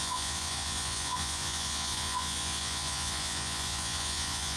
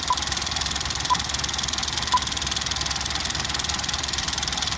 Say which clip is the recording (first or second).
second